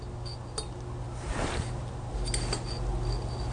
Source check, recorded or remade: recorded